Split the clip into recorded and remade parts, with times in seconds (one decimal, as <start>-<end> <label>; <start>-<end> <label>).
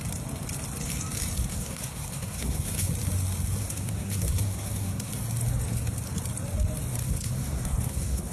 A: 0.0-1.5 recorded; 1.5-2.9 remade; 2.9-3.6 recorded; 3.6-5.1 remade; 5.1-6.9 recorded; 6.9-8.3 remade